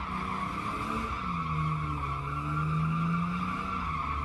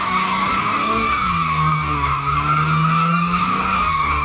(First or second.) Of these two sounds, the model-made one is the second